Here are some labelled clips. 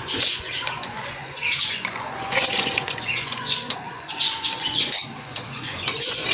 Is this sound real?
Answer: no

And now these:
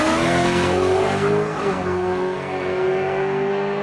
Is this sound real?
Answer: no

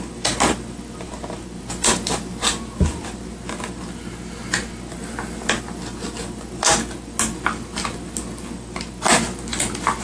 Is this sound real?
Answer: yes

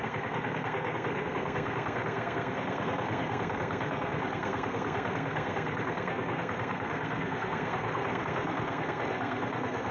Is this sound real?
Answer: no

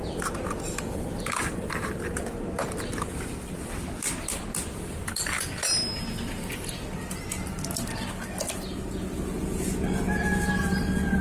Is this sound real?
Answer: yes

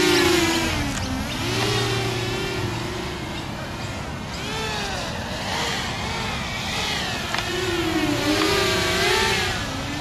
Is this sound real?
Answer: yes